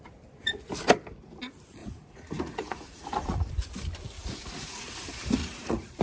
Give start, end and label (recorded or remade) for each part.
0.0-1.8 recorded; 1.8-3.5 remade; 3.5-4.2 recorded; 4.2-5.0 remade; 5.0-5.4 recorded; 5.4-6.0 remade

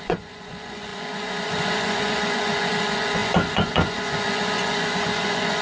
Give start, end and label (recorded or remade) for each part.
0.0-5.6 remade

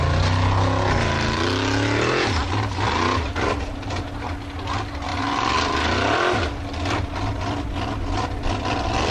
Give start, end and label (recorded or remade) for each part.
0.0-9.1 recorded

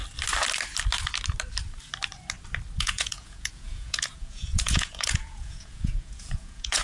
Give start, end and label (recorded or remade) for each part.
0.0-2.8 recorded; 2.8-6.8 remade

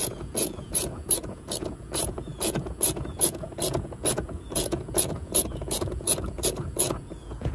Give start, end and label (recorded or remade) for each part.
0.0-7.5 remade

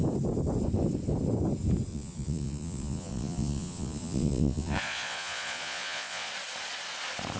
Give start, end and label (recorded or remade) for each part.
0.0-1.9 recorded; 1.9-6.3 remade; 6.3-7.4 recorded